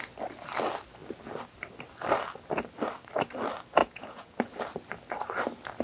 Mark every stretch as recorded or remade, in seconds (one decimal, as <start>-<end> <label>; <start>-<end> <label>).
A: 0.0-3.8 recorded; 3.8-4.4 remade; 4.4-5.8 recorded